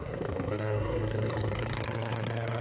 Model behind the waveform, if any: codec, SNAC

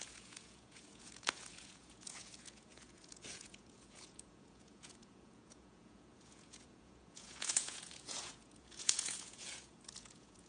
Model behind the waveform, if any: vocoder, Vocos